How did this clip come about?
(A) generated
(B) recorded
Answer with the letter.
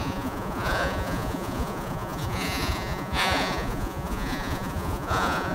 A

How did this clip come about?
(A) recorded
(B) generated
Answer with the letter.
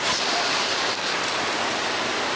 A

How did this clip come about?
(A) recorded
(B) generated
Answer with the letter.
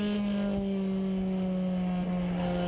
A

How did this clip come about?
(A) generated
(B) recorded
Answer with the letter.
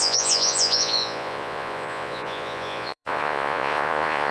A